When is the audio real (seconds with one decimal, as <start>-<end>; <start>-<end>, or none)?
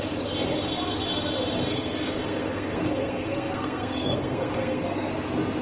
0.0-1.7; 5.1-5.6